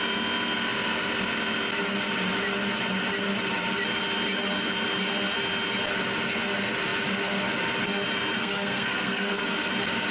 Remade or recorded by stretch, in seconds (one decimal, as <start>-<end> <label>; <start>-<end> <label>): 0.0-8.4 recorded; 8.4-9.7 remade; 9.7-10.1 recorded

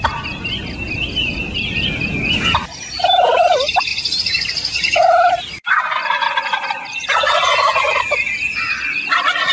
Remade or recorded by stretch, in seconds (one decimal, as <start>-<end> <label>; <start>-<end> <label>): 0.0-9.5 recorded